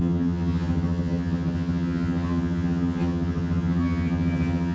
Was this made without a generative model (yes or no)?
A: no